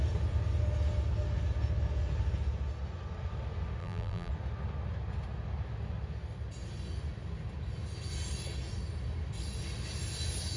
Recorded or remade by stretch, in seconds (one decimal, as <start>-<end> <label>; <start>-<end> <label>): 0.0-3.8 recorded; 3.8-4.3 remade; 4.3-10.6 recorded